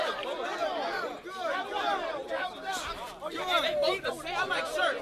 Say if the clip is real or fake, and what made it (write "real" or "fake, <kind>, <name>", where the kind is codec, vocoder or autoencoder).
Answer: real